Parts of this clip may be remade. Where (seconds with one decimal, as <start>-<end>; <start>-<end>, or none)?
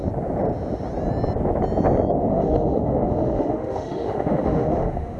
2.2-5.2